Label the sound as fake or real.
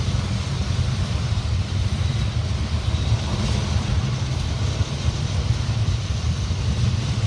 fake